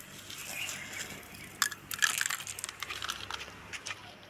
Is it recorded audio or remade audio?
recorded